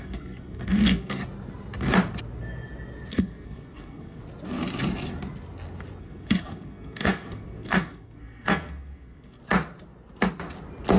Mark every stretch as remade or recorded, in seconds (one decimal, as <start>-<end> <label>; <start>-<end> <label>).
0.0-1.2 remade; 1.2-3.1 recorded; 3.1-4.2 remade; 4.2-6.0 recorded; 6.0-9.4 remade; 9.4-11.0 recorded